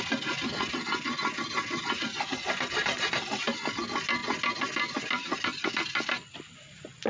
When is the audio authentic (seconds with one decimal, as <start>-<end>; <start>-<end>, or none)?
0.0-7.1